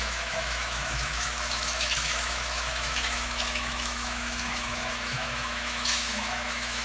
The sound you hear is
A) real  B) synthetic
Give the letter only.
B